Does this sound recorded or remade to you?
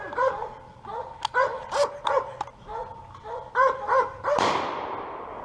recorded